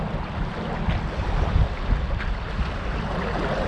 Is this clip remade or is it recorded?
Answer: recorded